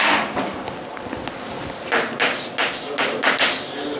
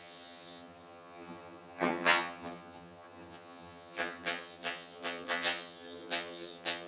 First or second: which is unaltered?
first